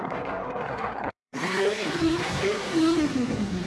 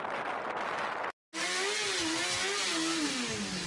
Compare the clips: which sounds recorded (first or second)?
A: second